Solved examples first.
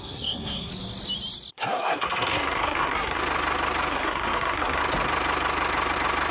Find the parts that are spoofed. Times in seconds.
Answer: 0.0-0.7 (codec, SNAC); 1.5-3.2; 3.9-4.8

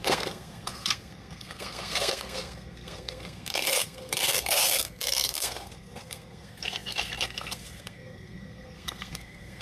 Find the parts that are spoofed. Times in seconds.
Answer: 0.0-9.6 (codec, SNAC)

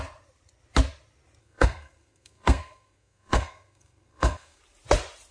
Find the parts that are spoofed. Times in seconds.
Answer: 1.4-4.6 (codec, SNAC)